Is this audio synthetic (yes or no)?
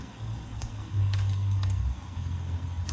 yes